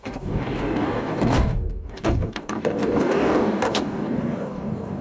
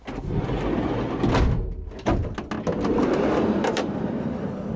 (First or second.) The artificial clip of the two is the first